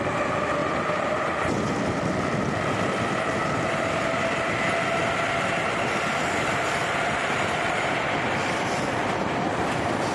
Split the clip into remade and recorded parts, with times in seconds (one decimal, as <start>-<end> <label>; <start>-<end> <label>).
0.0-0.6 recorded; 0.6-2.4 remade; 2.4-6.8 recorded; 6.8-9.3 remade; 9.3-10.1 recorded